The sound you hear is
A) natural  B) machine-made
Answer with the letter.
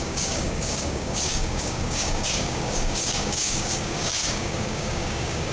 B